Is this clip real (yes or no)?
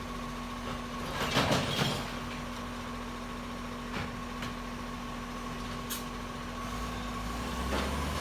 yes